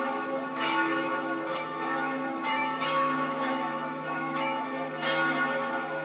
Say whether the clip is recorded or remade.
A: remade